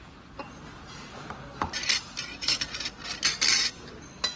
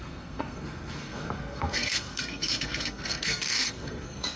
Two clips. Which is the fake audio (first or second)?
second